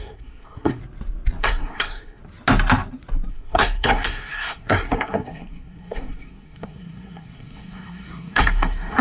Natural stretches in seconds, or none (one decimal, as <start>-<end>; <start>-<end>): 0.8-1.4; 2.2-3.3